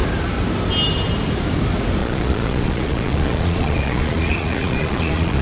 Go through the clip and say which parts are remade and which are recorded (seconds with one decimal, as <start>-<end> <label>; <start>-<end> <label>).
0.0-2.0 recorded; 2.0-5.4 remade